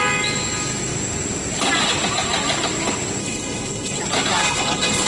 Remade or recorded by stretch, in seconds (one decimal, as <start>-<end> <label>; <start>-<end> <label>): 0.0-3.2 recorded; 3.2-4.0 remade; 4.0-4.4 recorded; 4.4-5.1 remade